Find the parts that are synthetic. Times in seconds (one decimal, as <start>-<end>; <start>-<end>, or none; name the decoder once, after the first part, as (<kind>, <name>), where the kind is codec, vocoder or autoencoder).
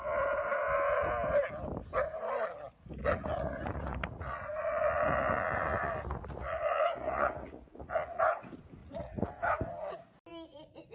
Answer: 3.0-8.2 (vocoder, Vocos); 8.8-9.4; 10.3-10.9